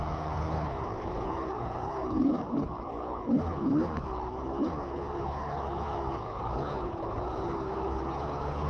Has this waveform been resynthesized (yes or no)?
yes